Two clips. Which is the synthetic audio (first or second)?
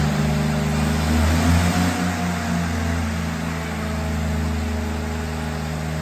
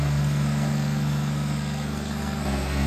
second